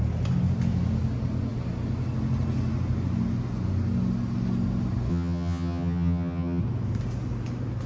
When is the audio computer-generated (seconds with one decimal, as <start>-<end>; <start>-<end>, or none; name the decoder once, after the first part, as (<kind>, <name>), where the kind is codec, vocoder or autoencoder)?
5.1-6.6 (vocoder, HiFi-GAN)